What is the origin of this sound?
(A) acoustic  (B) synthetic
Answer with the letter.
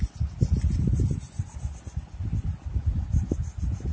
A